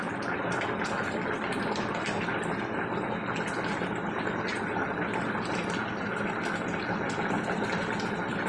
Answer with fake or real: real